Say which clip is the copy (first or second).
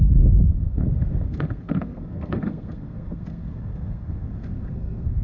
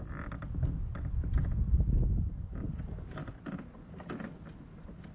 first